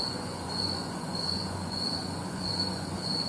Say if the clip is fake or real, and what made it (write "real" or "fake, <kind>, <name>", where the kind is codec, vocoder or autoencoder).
fake, vocoder, Vocos